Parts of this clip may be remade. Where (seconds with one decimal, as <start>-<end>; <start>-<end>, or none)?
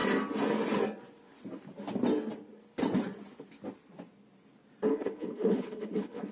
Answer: 4.9-6.3